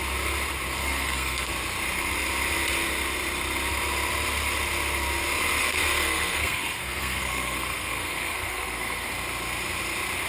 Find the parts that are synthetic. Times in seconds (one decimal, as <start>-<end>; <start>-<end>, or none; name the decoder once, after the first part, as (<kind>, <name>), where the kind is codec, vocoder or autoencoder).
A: 0.8-1.5 (codec, SNAC); 5.6-9.1